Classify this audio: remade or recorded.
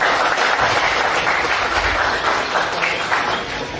recorded